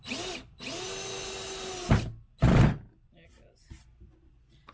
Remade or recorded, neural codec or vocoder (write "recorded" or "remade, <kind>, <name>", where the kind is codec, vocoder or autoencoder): recorded